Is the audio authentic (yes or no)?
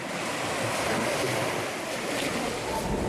no